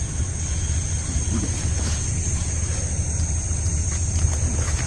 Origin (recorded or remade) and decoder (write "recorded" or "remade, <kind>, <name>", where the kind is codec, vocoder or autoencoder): recorded